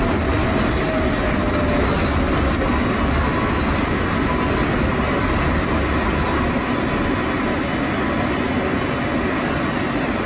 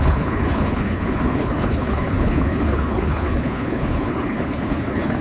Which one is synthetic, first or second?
second